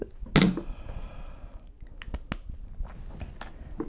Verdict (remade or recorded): recorded